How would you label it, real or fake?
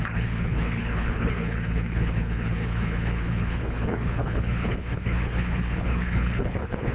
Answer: fake